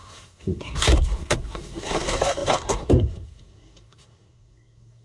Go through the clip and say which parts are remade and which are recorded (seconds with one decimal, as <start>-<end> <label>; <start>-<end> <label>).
0.0-5.0 remade